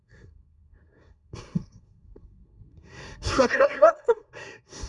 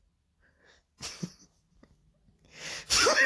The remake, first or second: first